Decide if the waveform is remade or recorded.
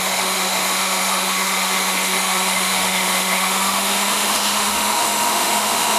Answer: remade